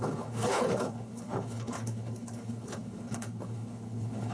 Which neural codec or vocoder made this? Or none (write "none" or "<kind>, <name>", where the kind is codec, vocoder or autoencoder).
codec, HILCodec